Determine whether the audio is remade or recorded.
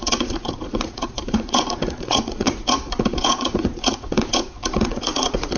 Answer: remade